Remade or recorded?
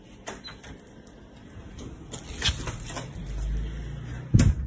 recorded